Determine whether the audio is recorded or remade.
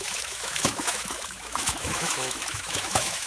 remade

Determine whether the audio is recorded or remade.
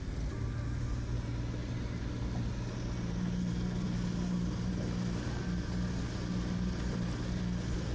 recorded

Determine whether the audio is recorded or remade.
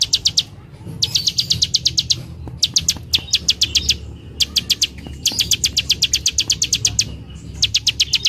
recorded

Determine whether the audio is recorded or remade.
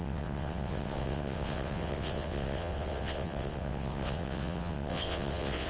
remade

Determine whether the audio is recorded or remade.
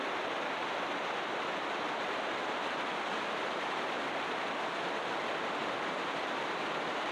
recorded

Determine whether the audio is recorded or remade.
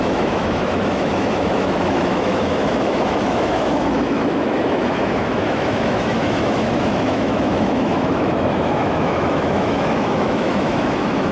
remade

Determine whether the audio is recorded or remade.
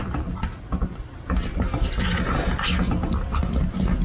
recorded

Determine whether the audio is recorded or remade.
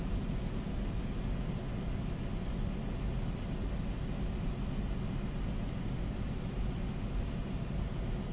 recorded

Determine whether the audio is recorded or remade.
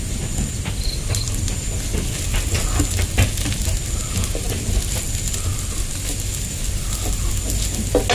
recorded